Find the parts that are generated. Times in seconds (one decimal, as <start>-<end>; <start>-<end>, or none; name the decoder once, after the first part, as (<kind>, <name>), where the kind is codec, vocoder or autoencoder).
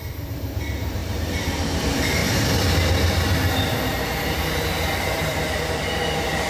0.0-2.2 (vocoder, BigVGAN v2); 3.7-6.5